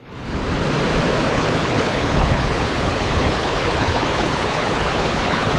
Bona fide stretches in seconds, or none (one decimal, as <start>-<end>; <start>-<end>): 0.4-1.3